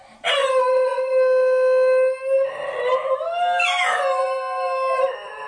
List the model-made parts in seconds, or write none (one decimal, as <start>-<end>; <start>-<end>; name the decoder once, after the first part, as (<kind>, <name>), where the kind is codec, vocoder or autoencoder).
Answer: none